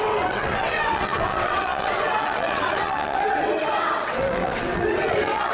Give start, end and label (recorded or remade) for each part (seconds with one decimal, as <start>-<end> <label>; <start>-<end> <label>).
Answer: 0.0-5.5 remade